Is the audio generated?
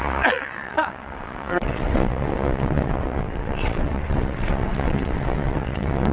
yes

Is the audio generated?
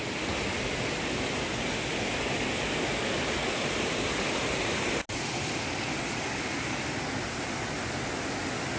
no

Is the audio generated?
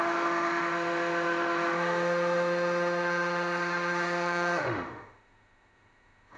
yes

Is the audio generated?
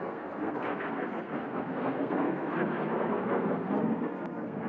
yes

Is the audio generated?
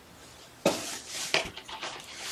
no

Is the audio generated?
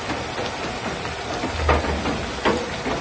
no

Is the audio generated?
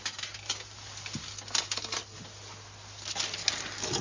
no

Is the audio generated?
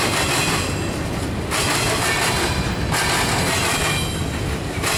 no